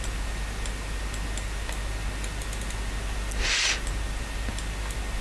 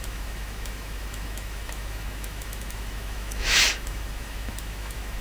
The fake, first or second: second